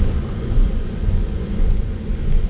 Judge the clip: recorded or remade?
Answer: remade